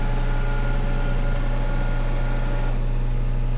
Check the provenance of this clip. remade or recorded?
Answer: recorded